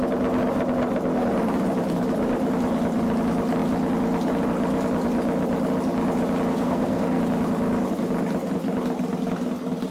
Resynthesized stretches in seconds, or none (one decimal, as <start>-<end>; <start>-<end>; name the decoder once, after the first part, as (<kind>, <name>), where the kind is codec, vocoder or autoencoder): 6.5-7.2 (codec, SNAC)